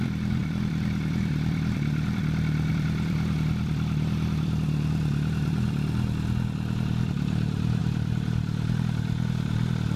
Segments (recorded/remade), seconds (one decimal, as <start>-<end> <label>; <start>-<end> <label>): 0.0-10.0 remade